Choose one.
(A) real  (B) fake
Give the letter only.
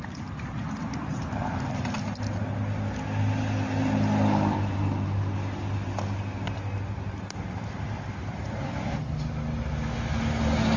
A